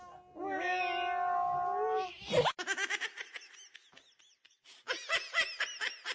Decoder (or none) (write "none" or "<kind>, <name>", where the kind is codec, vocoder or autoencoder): none